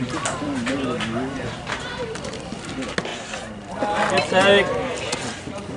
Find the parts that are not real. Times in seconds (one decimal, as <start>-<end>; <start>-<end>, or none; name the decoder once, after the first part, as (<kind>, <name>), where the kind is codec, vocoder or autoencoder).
none